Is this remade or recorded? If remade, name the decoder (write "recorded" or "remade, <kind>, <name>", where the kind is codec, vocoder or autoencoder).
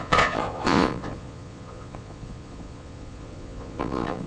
remade, vocoder, Vocos